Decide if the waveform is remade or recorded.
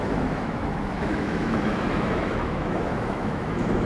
remade